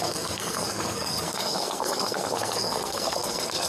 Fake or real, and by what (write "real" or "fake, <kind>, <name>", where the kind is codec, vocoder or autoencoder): fake, codec, SNAC